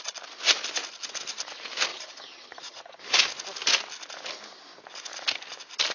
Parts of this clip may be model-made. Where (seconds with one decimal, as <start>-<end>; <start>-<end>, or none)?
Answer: 1.9-3.0